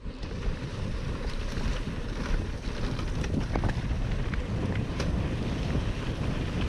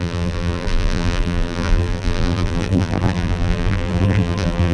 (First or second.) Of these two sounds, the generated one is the second